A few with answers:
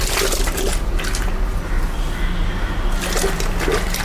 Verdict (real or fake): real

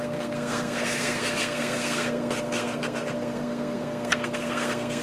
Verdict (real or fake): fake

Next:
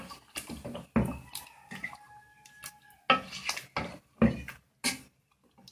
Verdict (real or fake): real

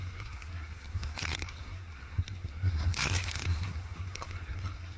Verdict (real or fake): fake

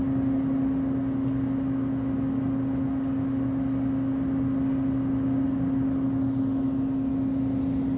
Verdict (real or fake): real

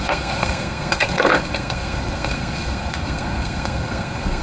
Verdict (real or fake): fake